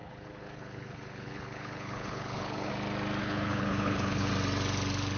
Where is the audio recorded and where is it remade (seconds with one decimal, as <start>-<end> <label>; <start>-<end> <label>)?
0.0-2.7 remade; 2.7-3.2 recorded; 3.2-4.3 remade; 4.3-5.2 recorded